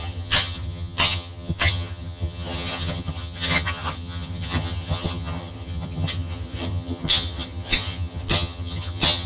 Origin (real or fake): fake